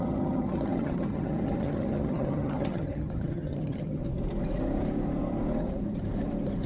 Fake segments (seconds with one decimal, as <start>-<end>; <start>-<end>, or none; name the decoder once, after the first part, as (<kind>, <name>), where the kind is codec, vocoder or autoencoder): 0.0-4.0 (vocoder, HiFi-GAN)